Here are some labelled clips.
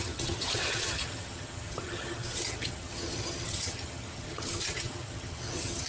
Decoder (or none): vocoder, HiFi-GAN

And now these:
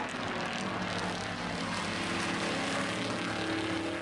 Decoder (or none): none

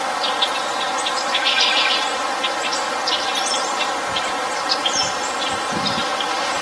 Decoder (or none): none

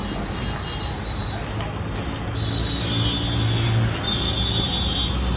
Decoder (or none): none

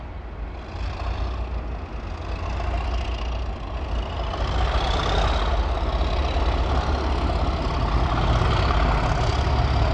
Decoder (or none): none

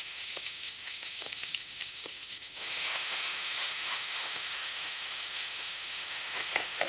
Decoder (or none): autoencoder, DAC-VAE